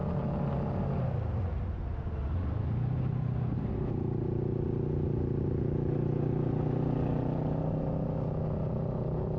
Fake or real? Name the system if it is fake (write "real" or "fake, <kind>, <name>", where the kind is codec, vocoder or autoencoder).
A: real